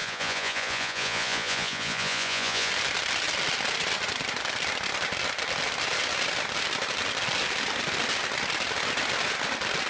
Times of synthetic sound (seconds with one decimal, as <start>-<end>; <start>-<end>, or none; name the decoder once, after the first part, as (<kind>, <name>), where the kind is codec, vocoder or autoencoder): 0.0-2.7 (vocoder, Vocos)